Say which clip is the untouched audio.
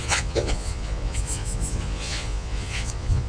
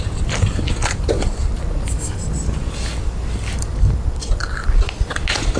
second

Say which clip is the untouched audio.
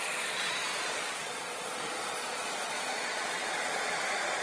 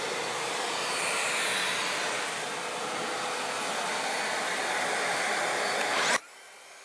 second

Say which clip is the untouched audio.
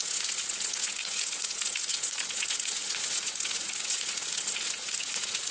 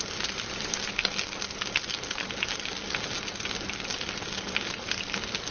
second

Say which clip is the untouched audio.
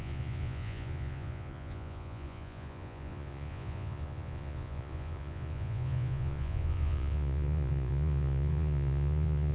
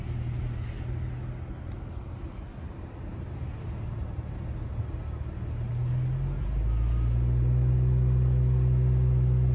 second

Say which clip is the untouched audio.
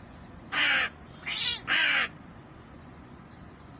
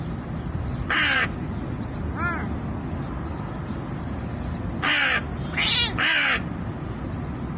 second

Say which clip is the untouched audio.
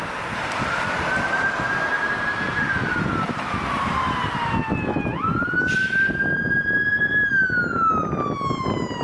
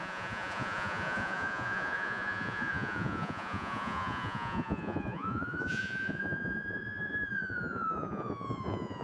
first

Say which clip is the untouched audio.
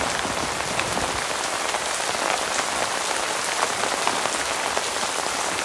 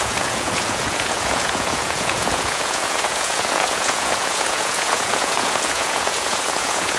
first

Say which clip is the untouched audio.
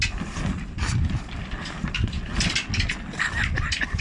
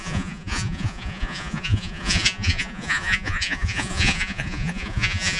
first